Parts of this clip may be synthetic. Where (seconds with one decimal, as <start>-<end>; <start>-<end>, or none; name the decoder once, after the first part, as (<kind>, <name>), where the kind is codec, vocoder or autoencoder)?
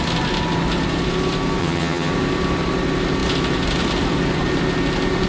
1.6-2.1 (vocoder, HiFi-GAN)